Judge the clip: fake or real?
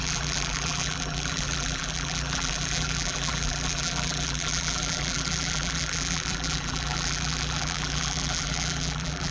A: fake